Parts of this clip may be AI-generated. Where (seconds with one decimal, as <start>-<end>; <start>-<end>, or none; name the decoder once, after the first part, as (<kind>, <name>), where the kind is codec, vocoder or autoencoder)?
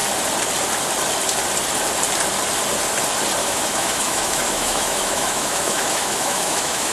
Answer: 3.4-6.9 (autoencoder, DAC-VAE)